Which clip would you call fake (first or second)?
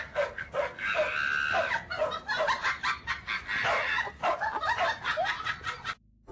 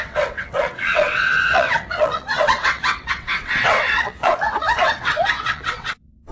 second